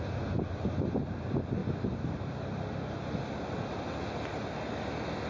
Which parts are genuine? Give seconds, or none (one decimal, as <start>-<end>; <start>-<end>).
0.0-5.3

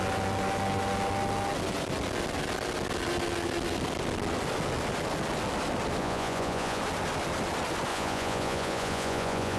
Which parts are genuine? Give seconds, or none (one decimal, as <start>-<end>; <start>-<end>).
0.0-6.0; 6.8-7.9